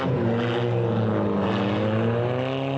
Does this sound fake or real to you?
real